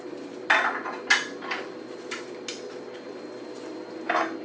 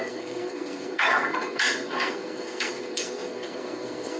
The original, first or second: first